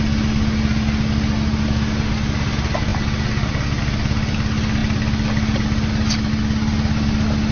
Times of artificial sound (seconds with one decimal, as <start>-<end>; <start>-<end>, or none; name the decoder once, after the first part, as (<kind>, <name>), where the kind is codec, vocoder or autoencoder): none